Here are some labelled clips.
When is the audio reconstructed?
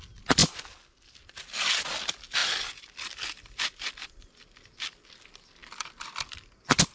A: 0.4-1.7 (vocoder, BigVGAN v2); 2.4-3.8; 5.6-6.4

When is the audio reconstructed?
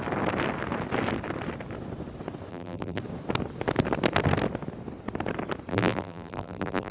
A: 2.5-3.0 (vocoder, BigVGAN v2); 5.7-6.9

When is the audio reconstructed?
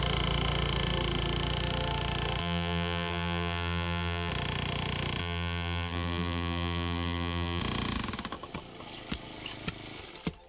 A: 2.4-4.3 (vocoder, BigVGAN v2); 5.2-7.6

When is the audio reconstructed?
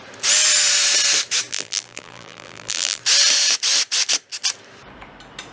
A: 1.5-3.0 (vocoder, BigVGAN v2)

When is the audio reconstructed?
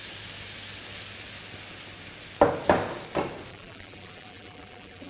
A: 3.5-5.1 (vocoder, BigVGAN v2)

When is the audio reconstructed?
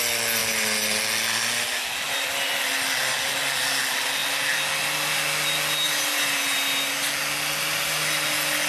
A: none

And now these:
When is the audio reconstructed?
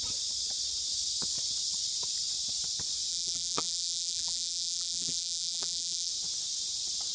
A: 3.1-6.1 (vocoder, BigVGAN v2)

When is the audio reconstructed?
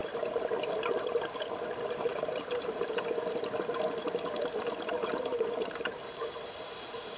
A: 2.1-3.0 (vocoder, BigVGAN v2); 5.3-7.2